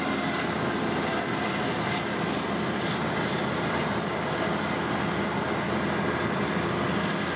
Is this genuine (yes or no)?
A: yes